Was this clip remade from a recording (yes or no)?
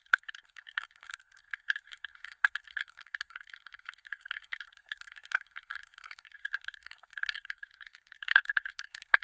yes